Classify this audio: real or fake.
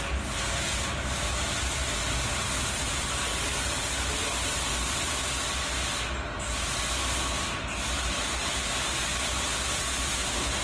real